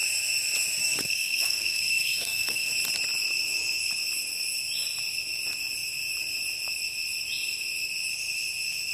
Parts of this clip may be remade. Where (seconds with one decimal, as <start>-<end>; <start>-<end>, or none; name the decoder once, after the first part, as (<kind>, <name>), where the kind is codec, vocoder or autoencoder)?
0.8-2.7 (codec, SNAC)